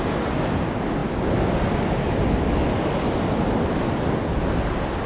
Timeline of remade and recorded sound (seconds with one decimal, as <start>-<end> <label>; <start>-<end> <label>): 0.0-5.1 recorded